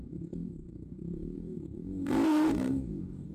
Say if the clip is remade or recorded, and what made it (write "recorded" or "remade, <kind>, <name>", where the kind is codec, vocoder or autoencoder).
remade, codec, DAC